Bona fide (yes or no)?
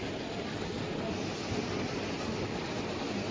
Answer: yes